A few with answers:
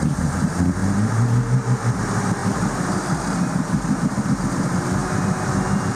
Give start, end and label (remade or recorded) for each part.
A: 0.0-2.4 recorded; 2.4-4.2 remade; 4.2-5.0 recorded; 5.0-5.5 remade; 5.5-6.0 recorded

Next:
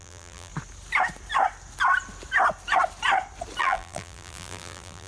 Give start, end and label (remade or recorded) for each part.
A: 0.0-0.5 remade; 0.5-3.6 recorded; 3.6-5.1 remade

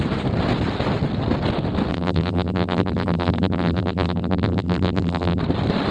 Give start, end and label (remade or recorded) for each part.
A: 0.0-1.9 recorded; 1.9-5.4 remade; 5.4-5.9 recorded